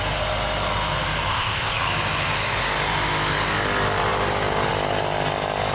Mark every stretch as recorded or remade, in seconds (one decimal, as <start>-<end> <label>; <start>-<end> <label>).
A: 0.0-1.3 recorded; 1.3-1.8 remade; 1.8-5.7 recorded